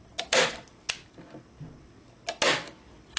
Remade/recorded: recorded